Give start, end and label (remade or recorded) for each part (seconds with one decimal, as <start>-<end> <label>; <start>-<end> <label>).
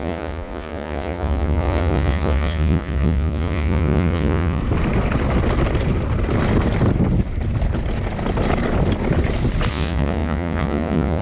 0.0-4.6 remade; 4.6-9.7 recorded; 9.7-11.2 remade